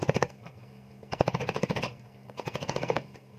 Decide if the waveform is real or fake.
fake